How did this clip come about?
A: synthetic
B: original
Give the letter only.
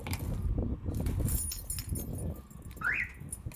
B